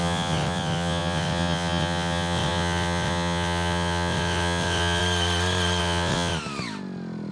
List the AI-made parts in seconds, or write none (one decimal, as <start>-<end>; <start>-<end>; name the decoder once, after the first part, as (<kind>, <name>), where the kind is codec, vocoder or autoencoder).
0.0-5.0 (vocoder, WaveNeXt); 5.8-6.3